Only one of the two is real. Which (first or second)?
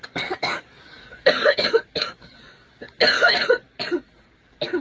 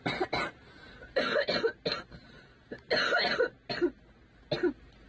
second